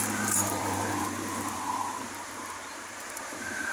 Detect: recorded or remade remade